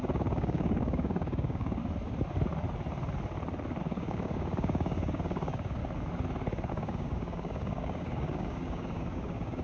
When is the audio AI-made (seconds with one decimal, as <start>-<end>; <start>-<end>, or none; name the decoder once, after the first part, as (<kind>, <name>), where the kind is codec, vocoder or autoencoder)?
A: 0.0-1.8 (codec, DAC); 3.8-5.8; 6.7-9.6